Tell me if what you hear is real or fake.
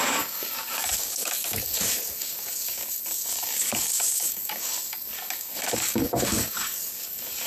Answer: fake